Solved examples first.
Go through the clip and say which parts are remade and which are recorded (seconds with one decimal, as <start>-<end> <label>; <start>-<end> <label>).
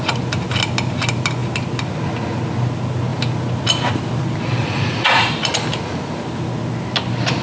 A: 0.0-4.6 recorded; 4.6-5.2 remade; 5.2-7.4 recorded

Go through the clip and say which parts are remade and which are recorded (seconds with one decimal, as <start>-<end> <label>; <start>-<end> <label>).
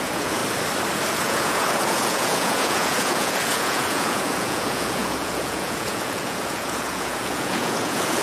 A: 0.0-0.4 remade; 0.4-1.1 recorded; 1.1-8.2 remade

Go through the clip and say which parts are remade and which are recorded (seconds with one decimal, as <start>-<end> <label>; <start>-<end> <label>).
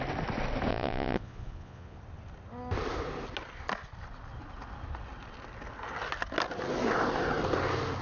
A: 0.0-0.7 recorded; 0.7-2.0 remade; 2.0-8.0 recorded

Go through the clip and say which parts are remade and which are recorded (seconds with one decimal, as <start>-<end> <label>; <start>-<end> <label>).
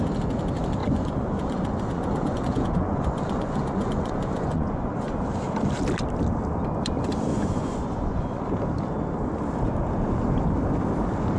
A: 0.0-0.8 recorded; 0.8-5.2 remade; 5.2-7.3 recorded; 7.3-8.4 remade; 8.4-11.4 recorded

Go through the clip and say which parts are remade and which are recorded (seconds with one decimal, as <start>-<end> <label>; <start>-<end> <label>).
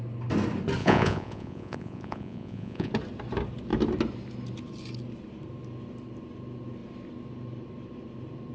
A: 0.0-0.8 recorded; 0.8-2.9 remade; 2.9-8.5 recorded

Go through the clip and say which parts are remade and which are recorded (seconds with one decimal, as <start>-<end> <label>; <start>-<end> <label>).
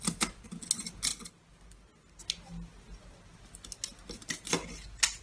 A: 0.0-5.2 recorded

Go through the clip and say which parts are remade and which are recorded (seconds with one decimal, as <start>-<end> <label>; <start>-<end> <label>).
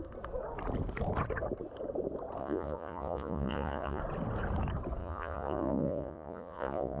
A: 0.0-2.4 recorded; 2.4-4.0 remade; 4.0-5.0 recorded; 5.0-7.0 remade